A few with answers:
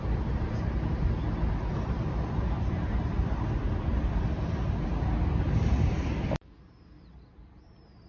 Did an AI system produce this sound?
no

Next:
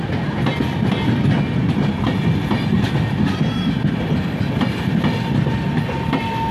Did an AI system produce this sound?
no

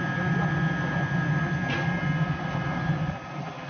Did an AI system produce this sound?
no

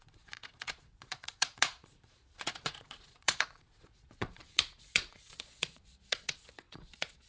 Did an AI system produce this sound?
yes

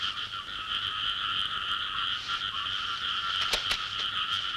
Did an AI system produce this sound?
no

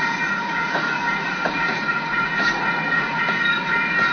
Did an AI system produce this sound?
yes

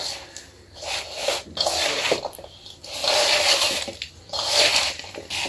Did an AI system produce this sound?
no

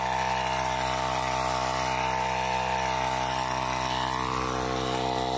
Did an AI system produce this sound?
no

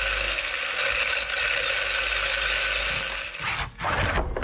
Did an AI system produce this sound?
no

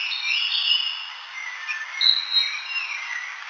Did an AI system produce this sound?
no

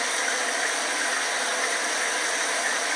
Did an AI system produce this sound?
no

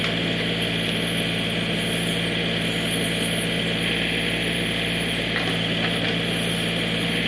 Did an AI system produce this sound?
no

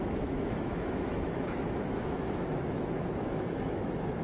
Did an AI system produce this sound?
yes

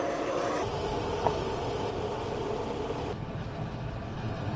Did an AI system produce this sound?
no